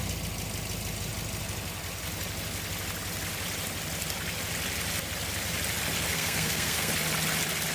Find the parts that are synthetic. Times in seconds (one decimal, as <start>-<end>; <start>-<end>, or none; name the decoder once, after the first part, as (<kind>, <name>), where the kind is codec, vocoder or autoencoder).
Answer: 6.1-6.9 (codec, SNAC)